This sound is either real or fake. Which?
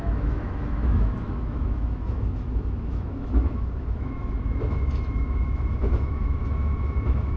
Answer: fake